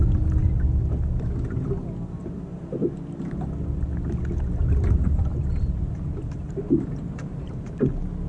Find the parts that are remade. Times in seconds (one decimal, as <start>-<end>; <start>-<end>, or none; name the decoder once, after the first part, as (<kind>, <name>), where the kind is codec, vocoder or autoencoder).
5.3-7.7 (vocoder, BigVGAN v2)

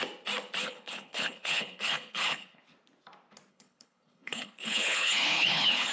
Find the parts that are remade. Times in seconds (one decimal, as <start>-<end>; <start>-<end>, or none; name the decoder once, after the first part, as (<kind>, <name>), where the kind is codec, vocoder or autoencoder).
0.6-2.6 (codec, HILCodec); 3.5-5.9

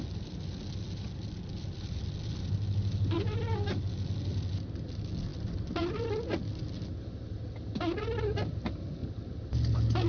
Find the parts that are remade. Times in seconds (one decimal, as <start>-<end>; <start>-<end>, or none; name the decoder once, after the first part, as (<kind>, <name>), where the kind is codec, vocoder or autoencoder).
5.3-5.9 (vocoder, BigVGAN v2)

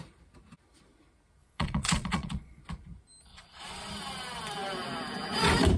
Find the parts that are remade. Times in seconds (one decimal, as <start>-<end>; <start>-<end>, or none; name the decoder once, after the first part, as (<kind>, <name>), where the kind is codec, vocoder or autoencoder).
1.4-2.6 (vocoder, Vocos); 3.3-3.9

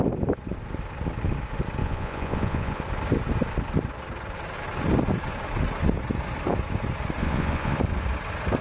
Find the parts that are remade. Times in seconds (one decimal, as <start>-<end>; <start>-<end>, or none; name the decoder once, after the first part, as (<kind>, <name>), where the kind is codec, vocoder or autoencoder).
1.8-2.8 (vocoder, Vocos); 7.2-7.8